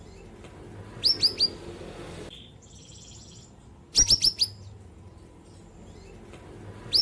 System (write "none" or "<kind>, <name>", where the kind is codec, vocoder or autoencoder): none